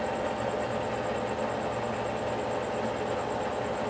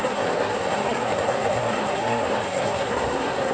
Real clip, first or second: first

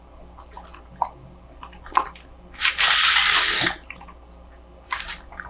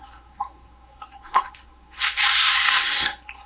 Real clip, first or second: first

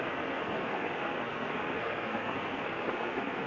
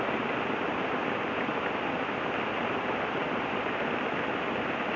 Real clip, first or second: second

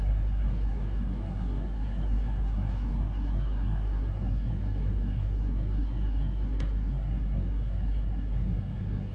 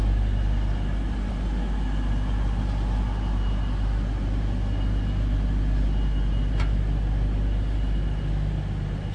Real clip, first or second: second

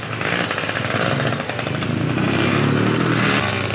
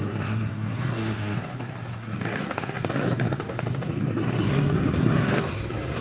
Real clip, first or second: first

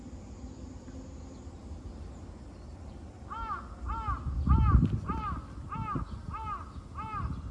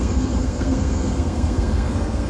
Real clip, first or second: first